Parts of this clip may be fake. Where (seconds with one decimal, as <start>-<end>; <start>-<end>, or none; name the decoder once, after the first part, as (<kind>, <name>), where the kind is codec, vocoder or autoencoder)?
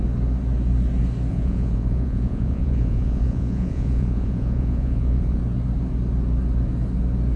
1.3-5.4 (vocoder, Vocos)